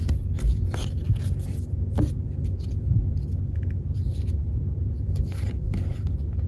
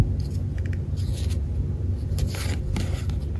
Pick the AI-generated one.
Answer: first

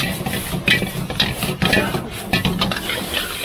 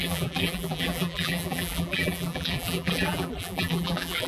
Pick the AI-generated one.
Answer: second